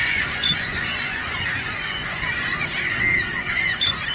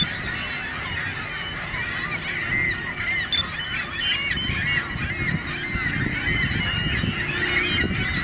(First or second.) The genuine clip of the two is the second